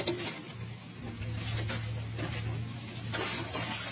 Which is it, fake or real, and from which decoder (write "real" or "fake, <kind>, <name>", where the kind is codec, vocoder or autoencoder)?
real